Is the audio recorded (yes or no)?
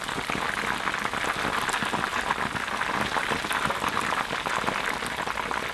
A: yes